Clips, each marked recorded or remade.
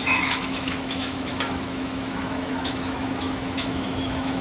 remade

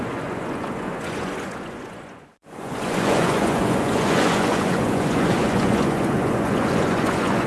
remade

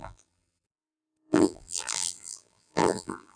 remade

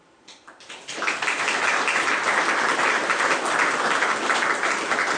recorded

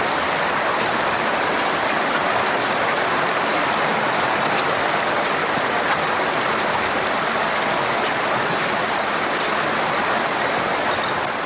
recorded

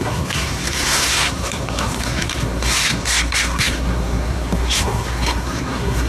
remade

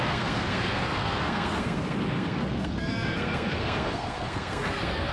remade